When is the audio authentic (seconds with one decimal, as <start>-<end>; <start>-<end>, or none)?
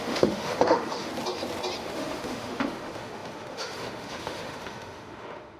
1.1-1.8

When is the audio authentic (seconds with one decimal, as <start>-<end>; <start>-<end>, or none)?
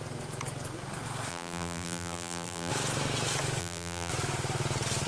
0.0-1.3; 2.7-3.6; 4.1-5.1